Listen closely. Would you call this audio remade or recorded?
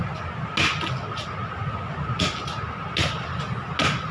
recorded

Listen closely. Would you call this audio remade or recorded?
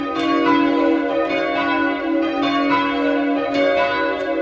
recorded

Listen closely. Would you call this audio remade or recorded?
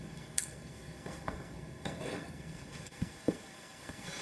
remade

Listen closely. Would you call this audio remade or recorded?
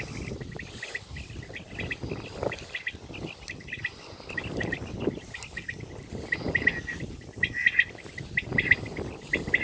recorded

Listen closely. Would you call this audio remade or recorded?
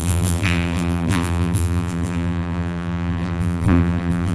remade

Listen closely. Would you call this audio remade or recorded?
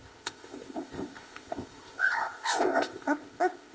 remade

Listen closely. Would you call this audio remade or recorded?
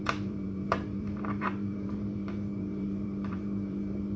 remade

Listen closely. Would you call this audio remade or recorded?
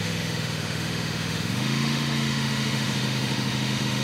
remade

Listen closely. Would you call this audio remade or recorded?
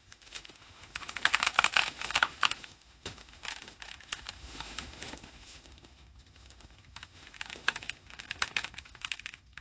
remade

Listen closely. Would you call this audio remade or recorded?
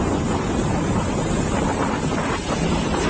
recorded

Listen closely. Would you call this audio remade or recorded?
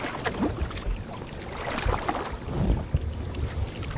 recorded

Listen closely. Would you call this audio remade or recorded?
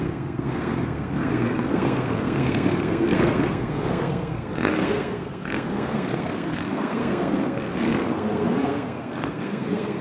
remade